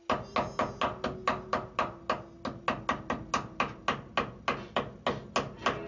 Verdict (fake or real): real